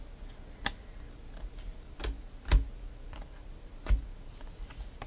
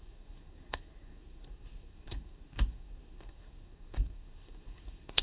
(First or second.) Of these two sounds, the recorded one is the first